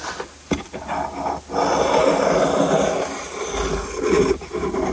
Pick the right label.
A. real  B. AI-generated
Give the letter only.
A